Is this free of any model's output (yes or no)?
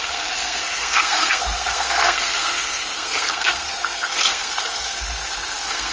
no